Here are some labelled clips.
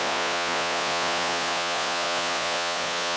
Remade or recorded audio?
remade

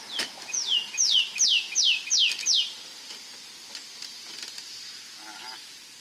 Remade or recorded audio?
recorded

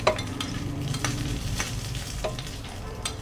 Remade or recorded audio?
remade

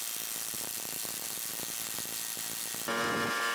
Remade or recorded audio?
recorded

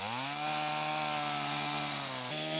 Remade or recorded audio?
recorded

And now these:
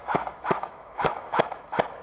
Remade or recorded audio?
remade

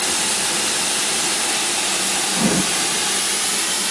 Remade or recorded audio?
recorded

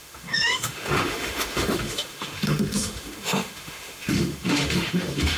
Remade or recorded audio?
remade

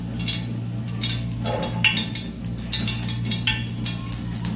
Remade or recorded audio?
recorded